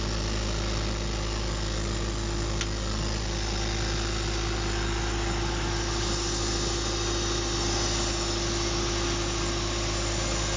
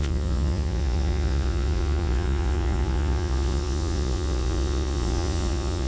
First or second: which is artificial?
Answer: second